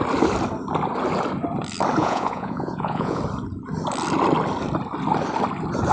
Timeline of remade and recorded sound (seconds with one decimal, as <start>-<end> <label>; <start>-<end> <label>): 0.0-2.0 recorded; 2.0-3.2 remade; 3.2-5.9 recorded